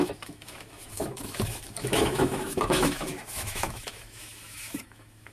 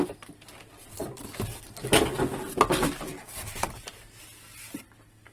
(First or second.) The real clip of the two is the second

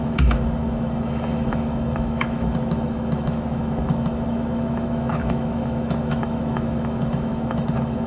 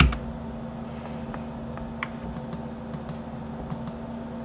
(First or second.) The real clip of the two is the second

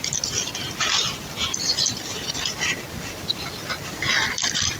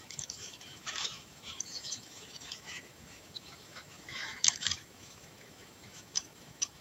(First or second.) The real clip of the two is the first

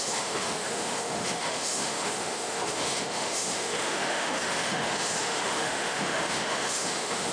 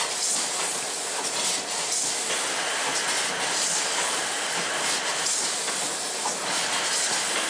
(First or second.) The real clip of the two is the second